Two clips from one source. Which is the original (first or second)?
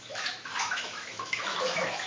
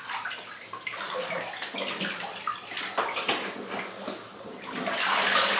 second